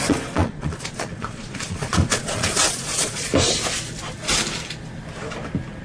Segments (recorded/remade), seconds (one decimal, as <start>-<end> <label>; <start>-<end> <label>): 0.0-3.3 remade; 3.3-5.8 recorded